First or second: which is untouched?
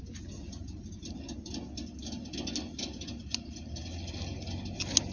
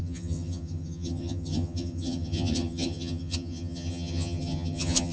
first